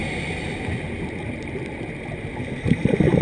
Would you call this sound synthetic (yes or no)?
no